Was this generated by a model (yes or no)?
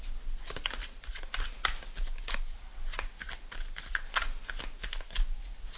no